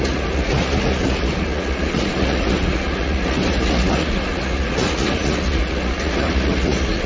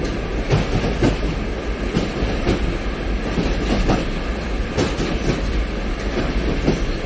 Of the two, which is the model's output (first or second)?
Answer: first